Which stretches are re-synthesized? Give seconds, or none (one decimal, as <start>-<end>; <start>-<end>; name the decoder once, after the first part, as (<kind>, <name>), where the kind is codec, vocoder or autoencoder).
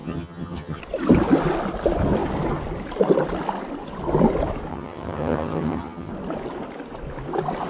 0.0-0.8 (vocoder, HiFi-GAN); 4.7-6.1